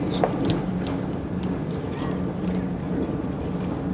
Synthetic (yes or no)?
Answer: no